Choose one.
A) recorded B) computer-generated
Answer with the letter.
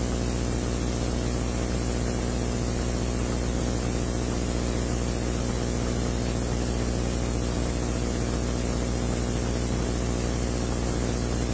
A